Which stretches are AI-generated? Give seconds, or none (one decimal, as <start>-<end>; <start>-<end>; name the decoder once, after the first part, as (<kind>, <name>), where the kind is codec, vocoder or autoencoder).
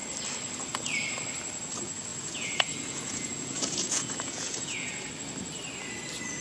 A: 2.1-5.1 (vocoder, Vocos)